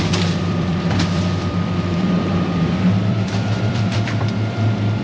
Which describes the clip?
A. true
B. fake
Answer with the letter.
B